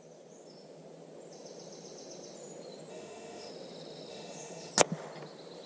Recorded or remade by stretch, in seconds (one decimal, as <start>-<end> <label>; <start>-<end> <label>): 0.0-2.9 recorded; 2.9-3.5 remade; 3.5-4.1 recorded; 4.1-4.7 remade; 4.7-5.7 recorded